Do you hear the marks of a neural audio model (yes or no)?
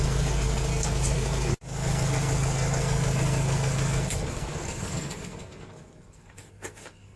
yes